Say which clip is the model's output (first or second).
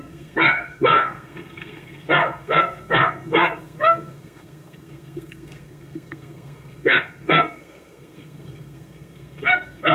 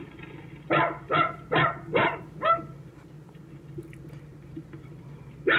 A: first